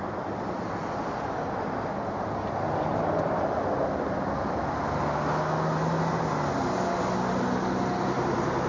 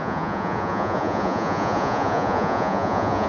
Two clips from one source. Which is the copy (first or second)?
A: second